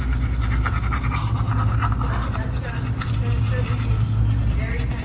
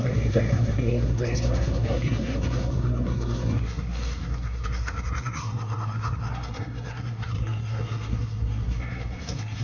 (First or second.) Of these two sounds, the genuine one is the first